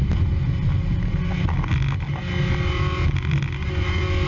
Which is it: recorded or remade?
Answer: recorded